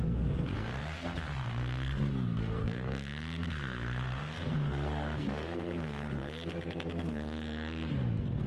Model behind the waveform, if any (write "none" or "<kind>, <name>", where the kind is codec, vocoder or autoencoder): codec, SNAC